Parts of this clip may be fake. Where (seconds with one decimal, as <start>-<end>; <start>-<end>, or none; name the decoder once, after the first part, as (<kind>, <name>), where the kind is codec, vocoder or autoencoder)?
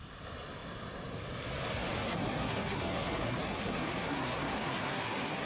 2.0-5.5 (codec, SNAC)